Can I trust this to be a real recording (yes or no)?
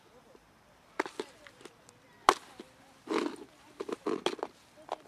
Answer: yes